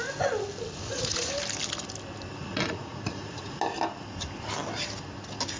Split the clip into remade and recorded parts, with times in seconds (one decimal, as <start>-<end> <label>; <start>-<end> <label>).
0.0-0.8 recorded; 0.8-1.3 remade; 1.3-2.4 recorded; 2.4-3.6 remade; 3.6-5.6 recorded

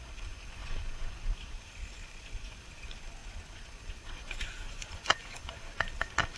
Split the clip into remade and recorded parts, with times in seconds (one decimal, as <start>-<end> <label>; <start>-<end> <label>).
0.0-6.4 remade